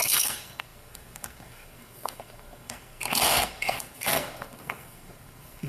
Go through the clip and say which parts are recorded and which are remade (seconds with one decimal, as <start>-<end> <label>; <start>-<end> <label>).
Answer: 0.0-5.7 remade